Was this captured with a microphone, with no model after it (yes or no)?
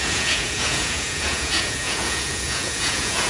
no